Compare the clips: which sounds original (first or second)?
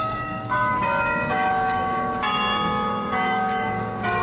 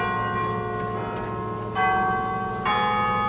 second